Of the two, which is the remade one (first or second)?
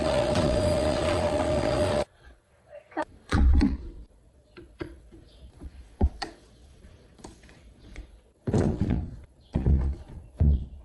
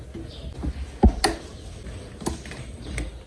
first